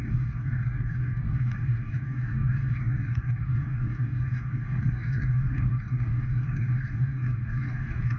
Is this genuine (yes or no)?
no